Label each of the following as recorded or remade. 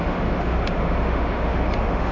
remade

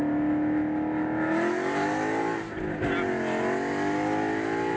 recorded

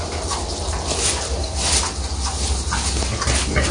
recorded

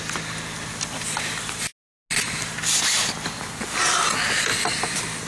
recorded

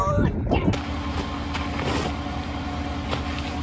recorded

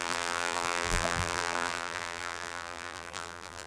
remade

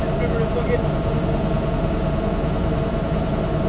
recorded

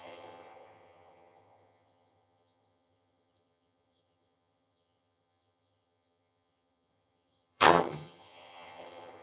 remade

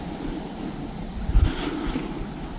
recorded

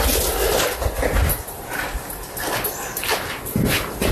recorded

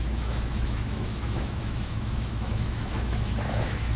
remade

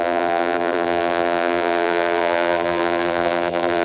remade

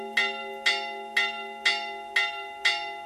recorded